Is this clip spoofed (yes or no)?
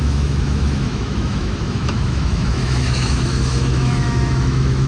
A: yes